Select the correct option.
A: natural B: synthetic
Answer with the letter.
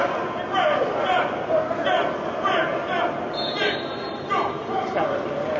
A